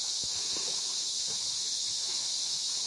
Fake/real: fake